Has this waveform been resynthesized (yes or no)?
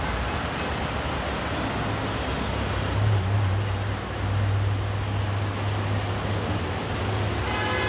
no